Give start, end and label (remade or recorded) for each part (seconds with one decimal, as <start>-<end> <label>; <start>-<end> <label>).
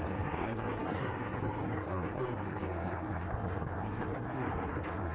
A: 0.0-5.1 remade